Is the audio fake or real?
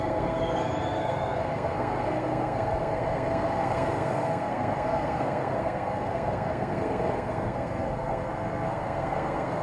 fake